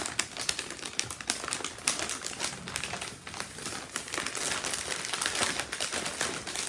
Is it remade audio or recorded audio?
recorded